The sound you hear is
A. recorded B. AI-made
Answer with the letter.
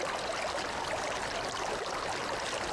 A